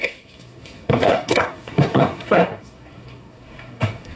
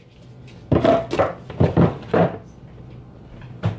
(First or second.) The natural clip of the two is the second